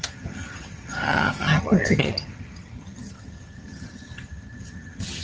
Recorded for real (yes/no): no